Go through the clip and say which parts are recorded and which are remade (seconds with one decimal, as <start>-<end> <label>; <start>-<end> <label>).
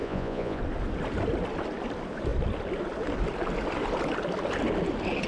0.0-0.6 remade; 0.6-5.3 recorded